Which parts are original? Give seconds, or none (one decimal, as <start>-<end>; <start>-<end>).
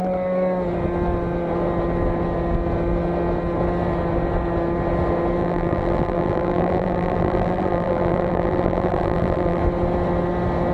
0.0-5.4; 9.6-10.7